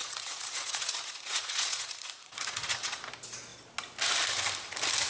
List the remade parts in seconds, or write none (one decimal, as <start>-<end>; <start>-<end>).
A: 0.0-3.0